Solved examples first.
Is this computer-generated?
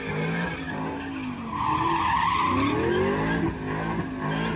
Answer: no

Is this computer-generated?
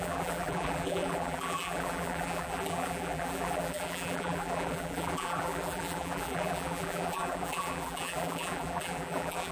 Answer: yes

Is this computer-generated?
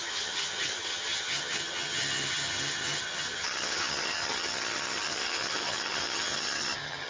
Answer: yes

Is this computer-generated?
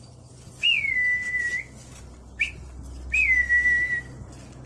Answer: no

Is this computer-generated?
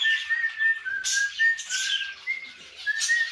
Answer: no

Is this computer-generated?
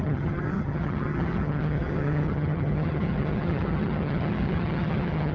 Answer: yes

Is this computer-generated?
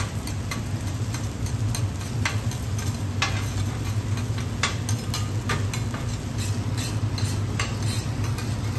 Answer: no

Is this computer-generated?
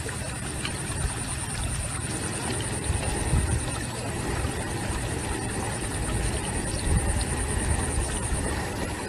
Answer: yes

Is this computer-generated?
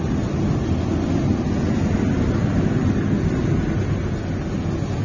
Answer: no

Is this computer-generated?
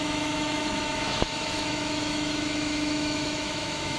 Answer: yes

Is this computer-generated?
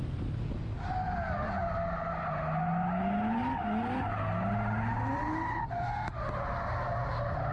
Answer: no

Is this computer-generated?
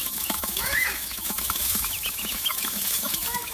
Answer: yes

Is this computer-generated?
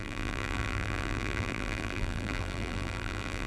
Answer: yes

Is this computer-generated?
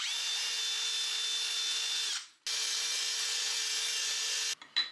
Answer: no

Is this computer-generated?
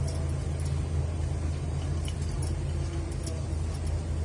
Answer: no